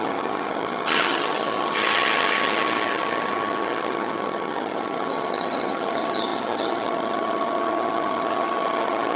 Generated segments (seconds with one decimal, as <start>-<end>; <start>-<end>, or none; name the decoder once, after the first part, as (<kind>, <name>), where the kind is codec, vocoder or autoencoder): 0.0-9.2 (vocoder, HiFi-GAN)

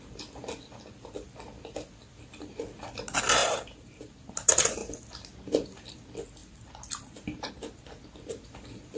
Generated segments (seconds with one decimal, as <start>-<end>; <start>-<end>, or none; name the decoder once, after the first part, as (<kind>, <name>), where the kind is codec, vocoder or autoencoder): 3.4-4.3 (vocoder, BigVGAN v2); 6.4-7.5

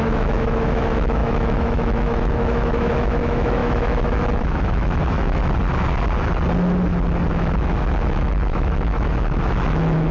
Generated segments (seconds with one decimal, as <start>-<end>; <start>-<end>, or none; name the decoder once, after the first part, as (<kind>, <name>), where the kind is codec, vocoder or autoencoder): 0.0-5.4 (autoencoder, DAC-VAE); 7.3-10.1

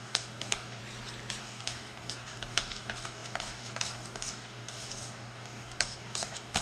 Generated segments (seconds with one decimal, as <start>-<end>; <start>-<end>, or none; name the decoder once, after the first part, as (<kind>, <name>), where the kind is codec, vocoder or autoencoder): 0.0-0.8 (codec, DAC); 1.4-6.6